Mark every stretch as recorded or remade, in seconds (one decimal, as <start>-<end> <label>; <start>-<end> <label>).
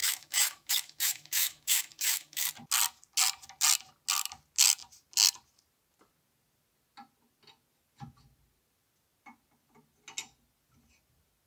0.0-2.5 remade; 2.5-11.5 recorded